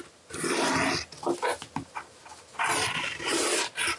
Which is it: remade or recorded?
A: recorded